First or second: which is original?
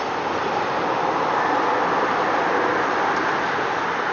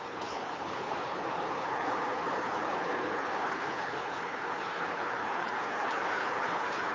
first